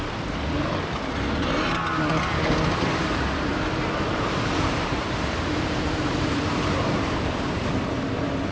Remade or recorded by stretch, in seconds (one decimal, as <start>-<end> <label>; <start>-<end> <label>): 0.0-1.7 remade; 1.7-2.8 recorded; 2.8-3.5 remade; 3.5-4.1 recorded; 4.1-8.5 remade